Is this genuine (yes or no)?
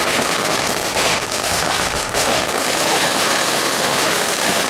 no